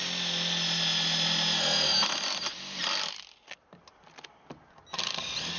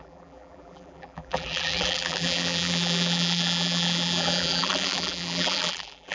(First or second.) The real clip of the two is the first